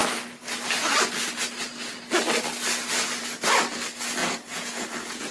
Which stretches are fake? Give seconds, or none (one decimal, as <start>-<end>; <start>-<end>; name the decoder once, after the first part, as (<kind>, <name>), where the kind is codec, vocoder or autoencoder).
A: 4.2-5.3 (vocoder, Vocos)